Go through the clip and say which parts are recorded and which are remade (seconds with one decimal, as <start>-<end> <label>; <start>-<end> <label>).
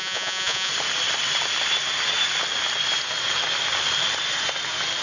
0.0-0.7 remade; 0.7-5.0 recorded